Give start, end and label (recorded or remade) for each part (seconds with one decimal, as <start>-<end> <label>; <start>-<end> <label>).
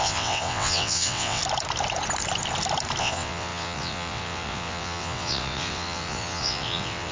0.0-1.4 remade; 1.4-3.0 recorded; 3.0-7.1 remade